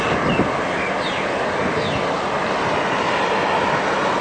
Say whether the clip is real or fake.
real